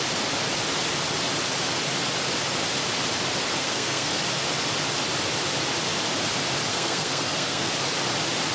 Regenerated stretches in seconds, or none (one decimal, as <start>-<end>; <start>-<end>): 3.6-4.2; 6.7-7.7